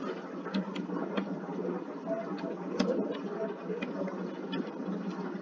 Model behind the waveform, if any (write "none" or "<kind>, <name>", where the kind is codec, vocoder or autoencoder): none